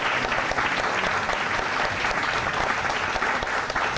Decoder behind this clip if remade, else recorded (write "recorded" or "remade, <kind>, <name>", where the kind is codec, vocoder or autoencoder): recorded